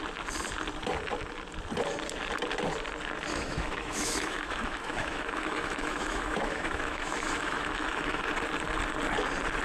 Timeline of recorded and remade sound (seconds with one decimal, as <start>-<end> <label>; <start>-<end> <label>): 0.0-3.3 recorded; 3.3-8.2 remade; 8.2-9.6 recorded